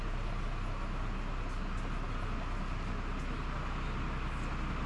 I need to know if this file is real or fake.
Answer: real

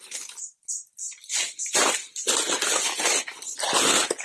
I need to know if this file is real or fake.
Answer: real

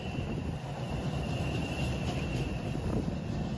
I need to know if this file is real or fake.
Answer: fake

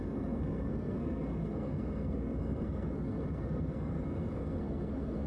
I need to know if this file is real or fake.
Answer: fake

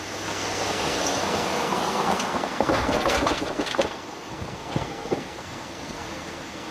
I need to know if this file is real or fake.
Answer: fake